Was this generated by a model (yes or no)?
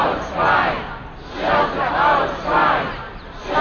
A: no